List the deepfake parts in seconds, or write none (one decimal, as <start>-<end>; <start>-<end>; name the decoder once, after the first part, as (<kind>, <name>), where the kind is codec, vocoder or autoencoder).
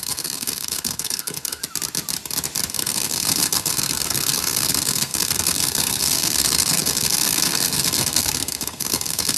0.0-1.6 (codec, SNAC); 2.7-9.4